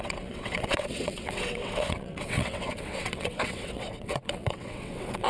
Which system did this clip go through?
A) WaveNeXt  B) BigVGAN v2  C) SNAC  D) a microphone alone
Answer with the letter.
A